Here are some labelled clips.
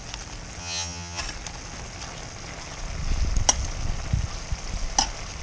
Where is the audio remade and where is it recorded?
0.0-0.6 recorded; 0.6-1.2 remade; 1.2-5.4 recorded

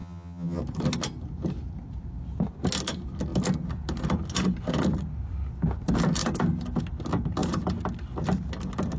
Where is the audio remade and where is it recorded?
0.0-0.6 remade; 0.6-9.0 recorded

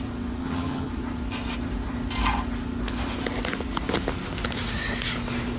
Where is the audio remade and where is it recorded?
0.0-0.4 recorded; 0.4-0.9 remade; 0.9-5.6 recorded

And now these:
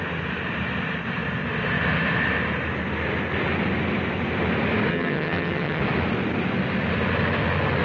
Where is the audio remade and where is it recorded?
0.0-4.9 recorded; 4.9-5.8 remade; 5.8-7.8 recorded

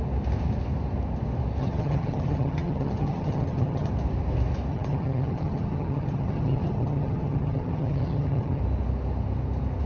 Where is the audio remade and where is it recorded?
0.0-1.6 recorded; 1.6-3.9 remade; 3.9-4.7 recorded; 4.7-8.6 remade; 8.6-9.9 recorded